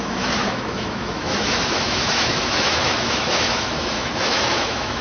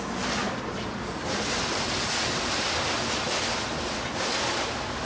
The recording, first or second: second